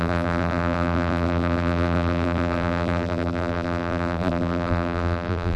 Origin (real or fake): fake